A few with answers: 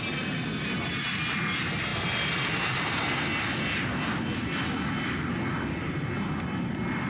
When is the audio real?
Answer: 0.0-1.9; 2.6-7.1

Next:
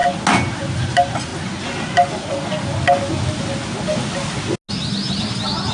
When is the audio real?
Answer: 0.0-5.7

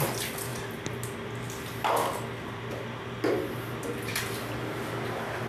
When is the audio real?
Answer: 0.0-5.5